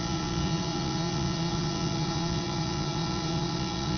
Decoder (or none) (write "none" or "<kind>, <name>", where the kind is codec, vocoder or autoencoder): vocoder, Vocos